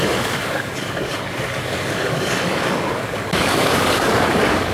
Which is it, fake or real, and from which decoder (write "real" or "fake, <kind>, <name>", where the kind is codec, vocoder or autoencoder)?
fake, codec, DAC